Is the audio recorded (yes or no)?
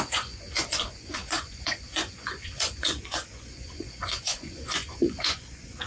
no